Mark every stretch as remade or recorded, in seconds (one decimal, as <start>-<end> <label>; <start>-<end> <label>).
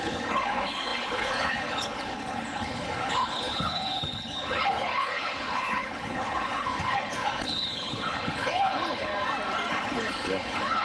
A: 0.0-9.1 remade; 9.1-9.7 recorded; 9.7-10.8 remade